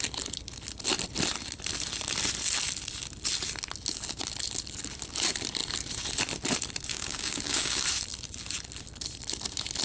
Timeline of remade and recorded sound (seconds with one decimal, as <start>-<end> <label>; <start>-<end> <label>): 0.0-6.9 recorded; 6.9-7.8 remade; 7.8-9.8 recorded